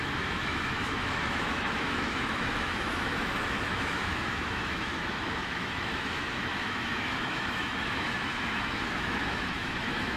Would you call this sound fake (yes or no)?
yes